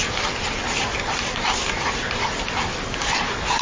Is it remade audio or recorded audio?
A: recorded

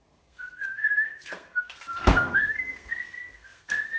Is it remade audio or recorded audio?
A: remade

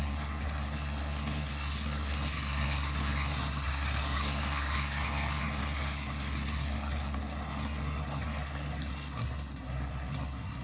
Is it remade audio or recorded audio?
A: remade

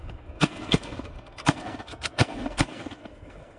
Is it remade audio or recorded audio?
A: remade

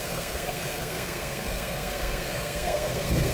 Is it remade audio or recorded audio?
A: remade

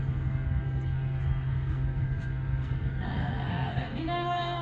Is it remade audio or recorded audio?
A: remade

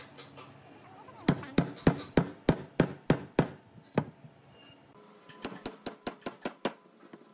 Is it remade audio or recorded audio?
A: recorded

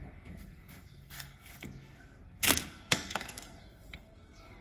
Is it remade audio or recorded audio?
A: remade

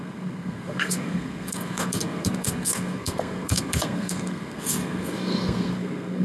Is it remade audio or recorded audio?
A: remade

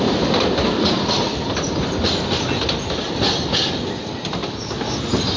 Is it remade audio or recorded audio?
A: recorded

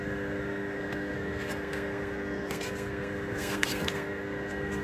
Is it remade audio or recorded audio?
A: remade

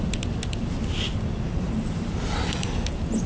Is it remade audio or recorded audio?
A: recorded